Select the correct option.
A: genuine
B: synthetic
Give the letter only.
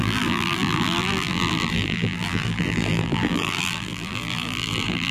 B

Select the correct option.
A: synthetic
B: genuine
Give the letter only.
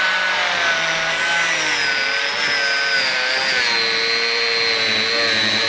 B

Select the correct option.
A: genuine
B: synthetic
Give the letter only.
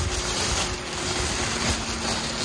A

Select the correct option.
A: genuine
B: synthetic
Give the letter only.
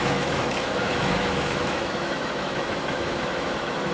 B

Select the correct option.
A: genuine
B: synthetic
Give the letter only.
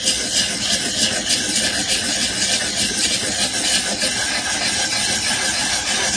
A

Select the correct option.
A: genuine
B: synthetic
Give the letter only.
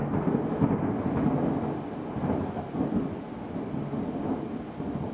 A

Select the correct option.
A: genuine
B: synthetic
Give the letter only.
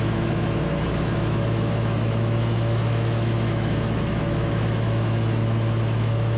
B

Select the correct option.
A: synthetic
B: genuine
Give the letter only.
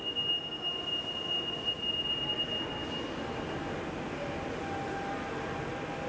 B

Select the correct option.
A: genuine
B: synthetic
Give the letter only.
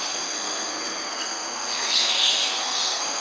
B